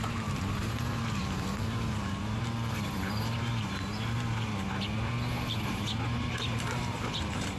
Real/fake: fake